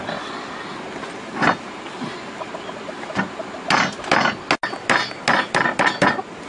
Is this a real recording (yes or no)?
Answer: yes